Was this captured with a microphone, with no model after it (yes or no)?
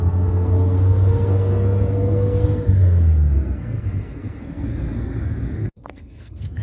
no